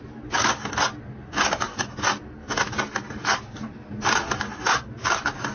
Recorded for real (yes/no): yes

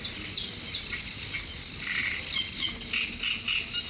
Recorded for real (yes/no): yes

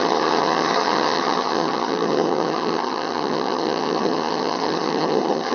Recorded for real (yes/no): no